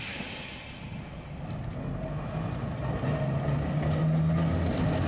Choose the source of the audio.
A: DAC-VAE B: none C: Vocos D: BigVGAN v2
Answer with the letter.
B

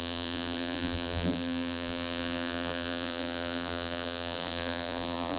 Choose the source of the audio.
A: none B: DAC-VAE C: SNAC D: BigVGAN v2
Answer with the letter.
D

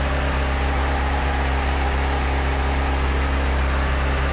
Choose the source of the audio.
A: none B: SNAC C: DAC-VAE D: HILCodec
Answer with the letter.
A